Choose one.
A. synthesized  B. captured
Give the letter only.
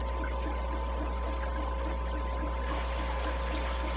B